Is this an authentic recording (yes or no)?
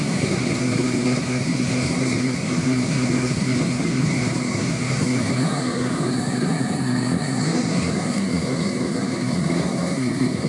no